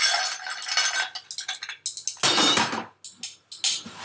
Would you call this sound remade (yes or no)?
no